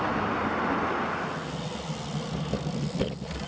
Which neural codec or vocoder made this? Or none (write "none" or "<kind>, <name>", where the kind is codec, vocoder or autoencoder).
none